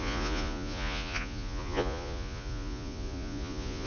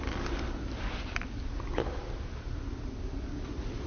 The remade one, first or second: first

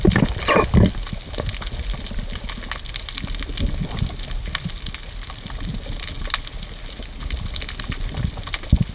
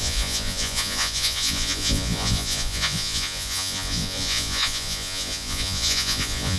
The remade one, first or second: second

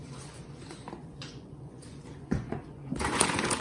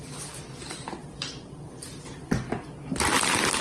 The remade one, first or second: first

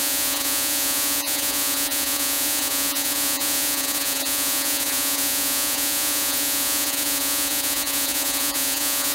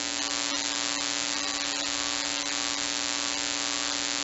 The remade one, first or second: first